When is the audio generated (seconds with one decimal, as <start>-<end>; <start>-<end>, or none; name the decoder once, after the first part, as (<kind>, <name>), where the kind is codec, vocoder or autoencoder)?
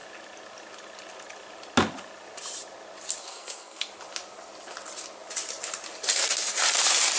3.2-3.9 (codec, SNAC)